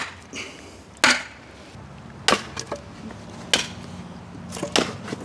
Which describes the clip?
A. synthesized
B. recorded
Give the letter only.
B